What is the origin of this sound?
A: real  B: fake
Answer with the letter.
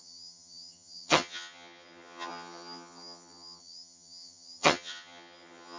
B